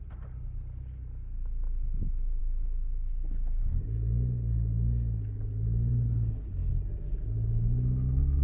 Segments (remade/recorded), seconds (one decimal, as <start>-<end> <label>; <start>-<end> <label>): 0.0-5.9 recorded; 5.9-6.7 remade; 6.7-8.4 recorded